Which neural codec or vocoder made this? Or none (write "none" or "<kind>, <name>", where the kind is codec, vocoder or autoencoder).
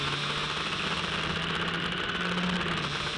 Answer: none